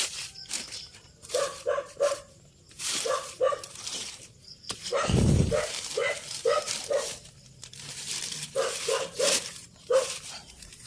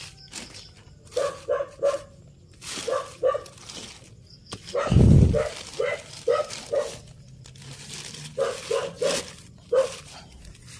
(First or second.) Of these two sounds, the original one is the second